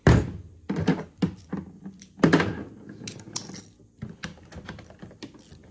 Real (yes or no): yes